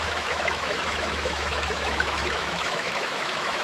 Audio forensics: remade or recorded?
remade